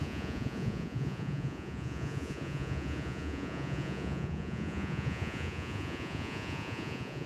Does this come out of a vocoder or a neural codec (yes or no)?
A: yes